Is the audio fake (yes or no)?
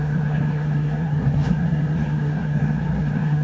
yes